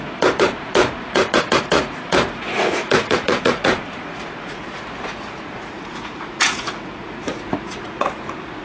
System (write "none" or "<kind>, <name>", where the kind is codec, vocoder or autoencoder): vocoder, Vocos